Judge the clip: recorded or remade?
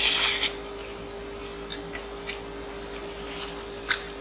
recorded